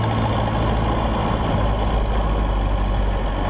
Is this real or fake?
real